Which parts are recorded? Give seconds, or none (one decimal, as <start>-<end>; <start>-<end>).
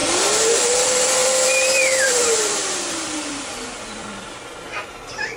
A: none